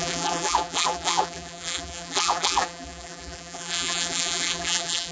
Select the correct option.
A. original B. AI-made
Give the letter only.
B